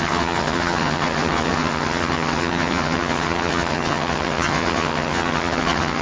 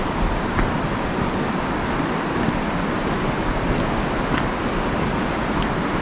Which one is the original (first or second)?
second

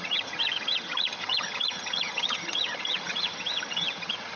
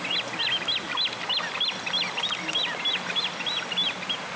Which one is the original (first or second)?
second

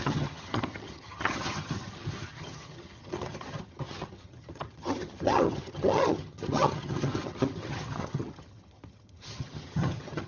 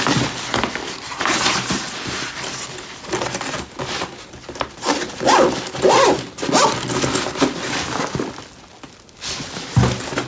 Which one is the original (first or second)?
second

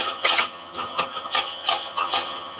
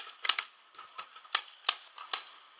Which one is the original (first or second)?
second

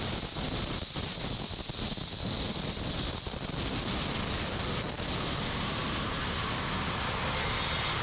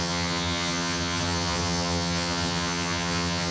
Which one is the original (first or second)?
first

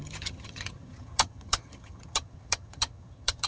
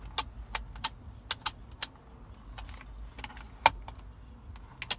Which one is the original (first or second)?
second